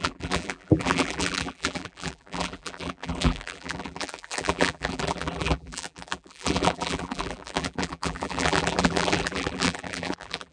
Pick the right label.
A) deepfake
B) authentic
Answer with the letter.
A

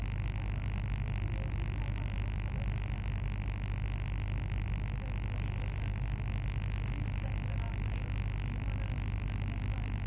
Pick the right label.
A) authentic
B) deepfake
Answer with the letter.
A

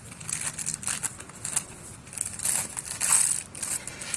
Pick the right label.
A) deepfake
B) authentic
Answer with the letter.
B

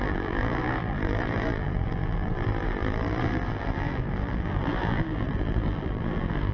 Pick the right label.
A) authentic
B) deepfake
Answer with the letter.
B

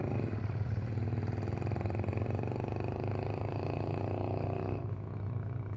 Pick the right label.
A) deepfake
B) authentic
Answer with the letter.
B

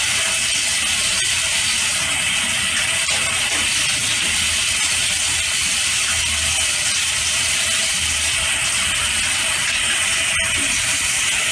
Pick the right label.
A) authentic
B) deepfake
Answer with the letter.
A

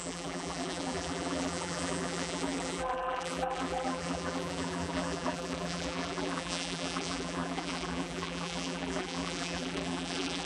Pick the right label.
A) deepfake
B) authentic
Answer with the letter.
A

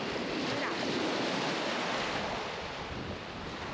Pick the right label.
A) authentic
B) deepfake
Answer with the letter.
A